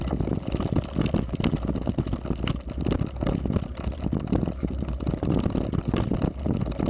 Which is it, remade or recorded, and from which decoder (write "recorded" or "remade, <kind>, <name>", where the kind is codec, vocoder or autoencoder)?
recorded